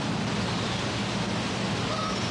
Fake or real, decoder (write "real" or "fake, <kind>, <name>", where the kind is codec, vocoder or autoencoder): real